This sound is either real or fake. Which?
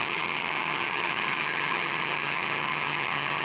fake